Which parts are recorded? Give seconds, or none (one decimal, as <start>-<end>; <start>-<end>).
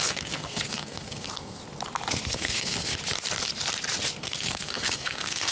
1.6-2.3; 2.9-4.2